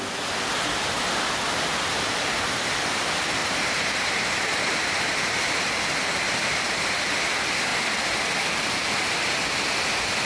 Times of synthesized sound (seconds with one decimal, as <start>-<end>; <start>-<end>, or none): 3.4-5.8